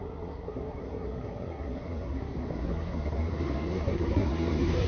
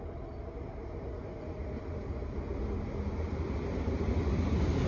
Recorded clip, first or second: second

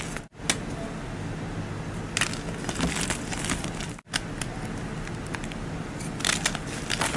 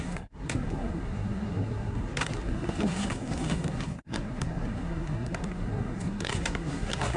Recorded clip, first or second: first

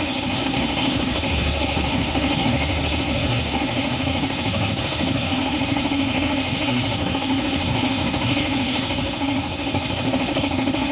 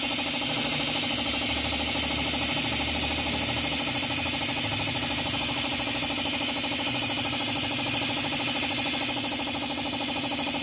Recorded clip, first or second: second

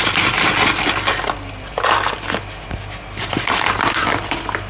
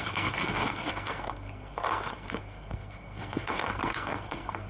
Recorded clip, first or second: first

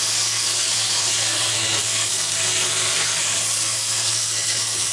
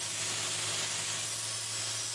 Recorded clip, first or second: second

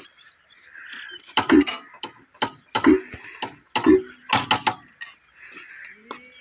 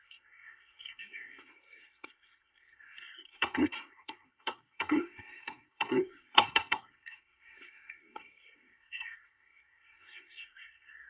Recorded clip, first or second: first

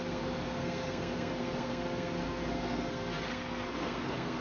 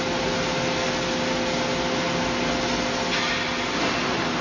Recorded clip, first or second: second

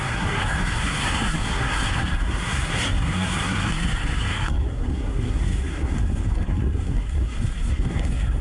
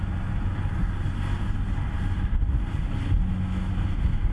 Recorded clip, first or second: second